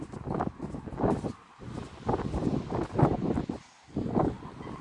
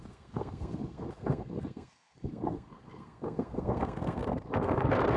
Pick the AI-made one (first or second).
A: second